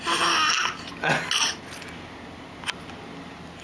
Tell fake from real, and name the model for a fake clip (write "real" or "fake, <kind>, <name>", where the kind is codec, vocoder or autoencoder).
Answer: real